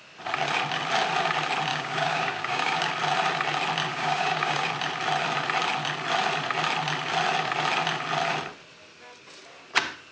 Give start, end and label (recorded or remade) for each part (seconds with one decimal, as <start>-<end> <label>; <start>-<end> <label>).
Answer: 0.0-1.7 recorded; 1.7-2.9 remade; 2.9-3.9 recorded; 3.9-4.7 remade; 4.7-10.1 recorded